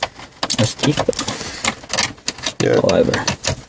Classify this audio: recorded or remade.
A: recorded